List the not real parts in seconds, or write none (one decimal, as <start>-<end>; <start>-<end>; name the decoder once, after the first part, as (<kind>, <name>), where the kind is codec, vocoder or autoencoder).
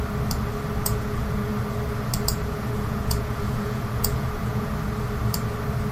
0.8-1.5 (vocoder, Vocos); 2.3-4.7